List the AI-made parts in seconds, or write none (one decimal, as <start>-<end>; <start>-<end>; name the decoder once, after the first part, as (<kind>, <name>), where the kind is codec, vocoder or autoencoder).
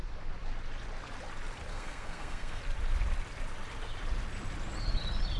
1.7-2.6 (codec, SNAC)